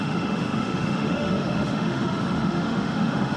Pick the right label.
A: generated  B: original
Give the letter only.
A